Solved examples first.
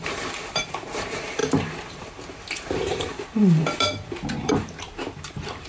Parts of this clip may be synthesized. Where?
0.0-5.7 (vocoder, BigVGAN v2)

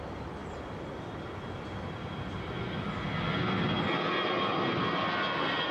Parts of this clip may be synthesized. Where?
none